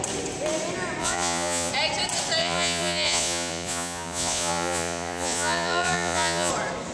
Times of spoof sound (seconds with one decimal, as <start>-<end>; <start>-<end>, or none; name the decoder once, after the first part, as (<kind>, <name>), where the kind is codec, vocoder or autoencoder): 1.0-1.7 (vocoder, Vocos); 2.4-6.5